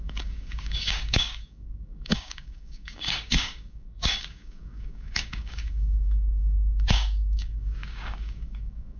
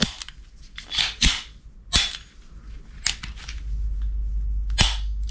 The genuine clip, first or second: second